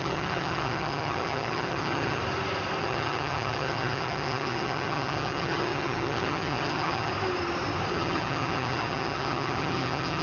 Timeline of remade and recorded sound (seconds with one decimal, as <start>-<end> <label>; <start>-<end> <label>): 0.0-2.2 remade; 2.2-2.8 recorded; 2.8-7.1 remade; 7.1-7.9 recorded; 7.9-10.2 remade